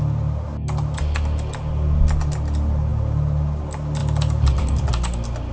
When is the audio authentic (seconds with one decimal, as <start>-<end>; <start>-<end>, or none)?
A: 0.0-5.5